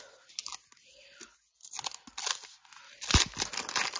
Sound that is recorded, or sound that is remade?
recorded